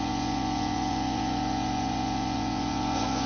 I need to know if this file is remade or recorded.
remade